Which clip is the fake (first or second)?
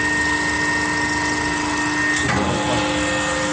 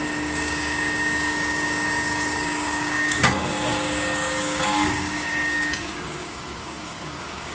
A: second